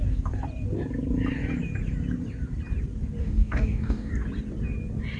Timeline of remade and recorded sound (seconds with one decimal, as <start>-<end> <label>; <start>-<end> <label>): 0.0-3.2 recorded; 3.2-4.1 remade; 4.1-5.2 recorded